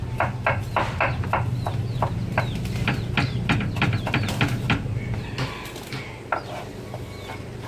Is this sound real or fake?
real